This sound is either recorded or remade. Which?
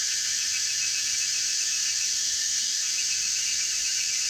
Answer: remade